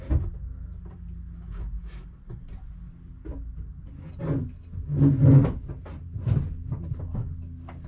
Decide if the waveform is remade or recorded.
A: recorded